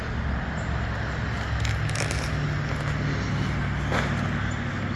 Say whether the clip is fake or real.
real